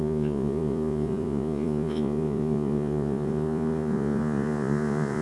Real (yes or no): no